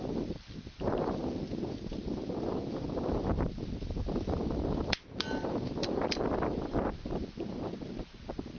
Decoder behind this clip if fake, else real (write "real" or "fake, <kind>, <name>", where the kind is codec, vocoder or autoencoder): real